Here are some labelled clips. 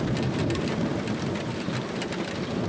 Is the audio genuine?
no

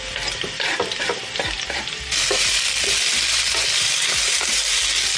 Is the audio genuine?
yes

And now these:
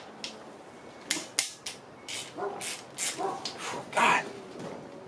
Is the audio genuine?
yes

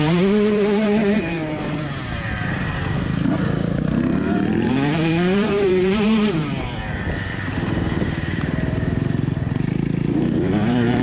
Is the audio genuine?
no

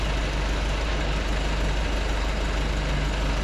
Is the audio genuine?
yes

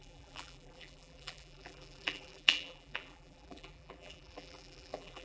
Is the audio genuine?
no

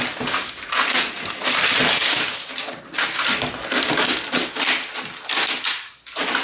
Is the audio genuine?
yes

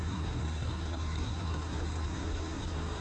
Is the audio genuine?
no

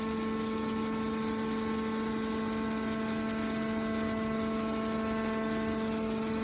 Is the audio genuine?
yes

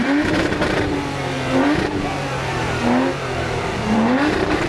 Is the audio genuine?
no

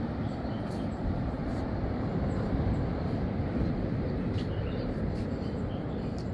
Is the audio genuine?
no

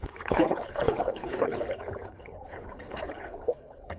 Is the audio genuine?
no